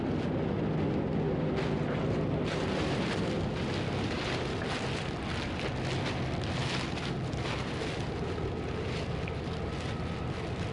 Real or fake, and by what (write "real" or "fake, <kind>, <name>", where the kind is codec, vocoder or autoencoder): real